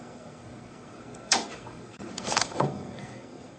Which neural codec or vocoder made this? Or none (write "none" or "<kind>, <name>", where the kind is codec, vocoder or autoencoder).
codec, SNAC